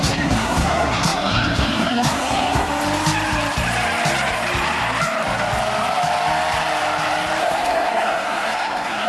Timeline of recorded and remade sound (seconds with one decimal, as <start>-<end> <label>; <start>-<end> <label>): 0.0-2.7 remade; 2.7-7.4 recorded; 7.4-9.1 remade